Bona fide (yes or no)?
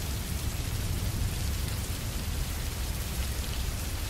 no